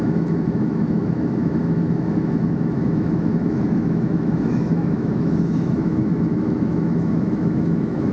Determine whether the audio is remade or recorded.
remade